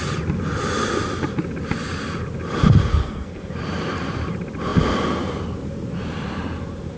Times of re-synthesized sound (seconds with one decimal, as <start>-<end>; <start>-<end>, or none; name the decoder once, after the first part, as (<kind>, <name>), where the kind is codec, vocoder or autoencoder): 2.9-3.5 (codec, SNAC)